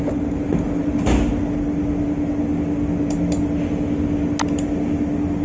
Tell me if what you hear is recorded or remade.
recorded